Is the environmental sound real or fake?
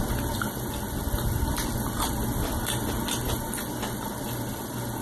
real